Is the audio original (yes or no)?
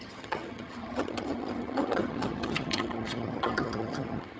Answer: no